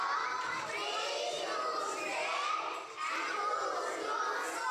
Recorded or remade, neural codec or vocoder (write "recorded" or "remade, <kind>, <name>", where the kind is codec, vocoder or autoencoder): remade, vocoder, BigVGAN v2